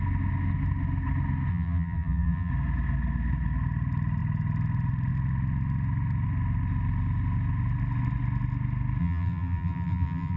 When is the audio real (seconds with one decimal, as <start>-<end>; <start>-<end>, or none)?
0.0-1.5; 2.5-9.0

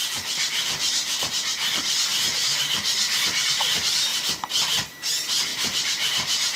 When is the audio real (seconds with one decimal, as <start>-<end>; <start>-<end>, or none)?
1.2-5.5

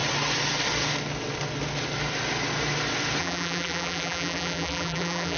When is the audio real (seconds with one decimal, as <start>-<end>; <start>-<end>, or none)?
0.0-3.2

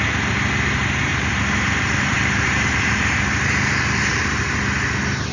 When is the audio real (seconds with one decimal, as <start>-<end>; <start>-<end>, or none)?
0.0-1.1; 4.3-5.3

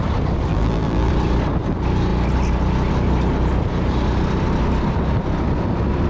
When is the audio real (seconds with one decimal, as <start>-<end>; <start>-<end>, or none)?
0.0-0.5; 1.1-6.1